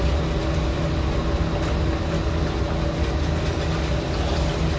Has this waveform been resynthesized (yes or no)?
no